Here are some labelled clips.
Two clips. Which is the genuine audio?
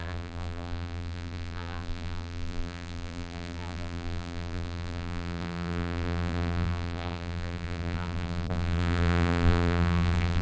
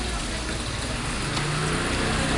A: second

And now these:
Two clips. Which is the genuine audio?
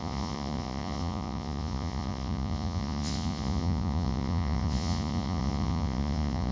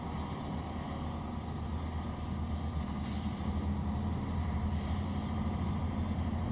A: second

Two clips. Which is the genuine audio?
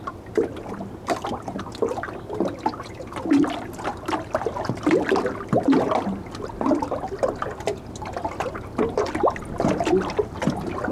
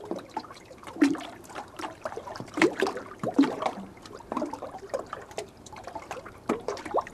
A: first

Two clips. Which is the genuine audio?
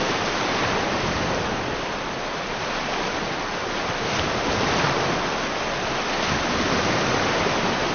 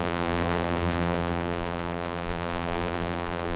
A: first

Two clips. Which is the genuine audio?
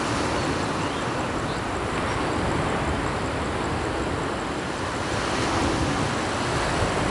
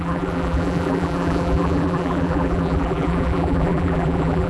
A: first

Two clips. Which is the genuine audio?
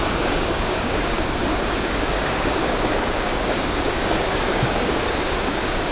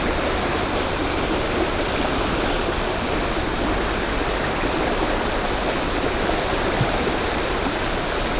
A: second